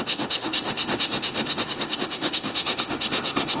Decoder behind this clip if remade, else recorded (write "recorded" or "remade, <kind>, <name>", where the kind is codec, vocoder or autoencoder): remade, autoencoder, DAC-VAE